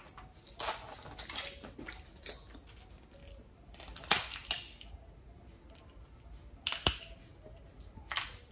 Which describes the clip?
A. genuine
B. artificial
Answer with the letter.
A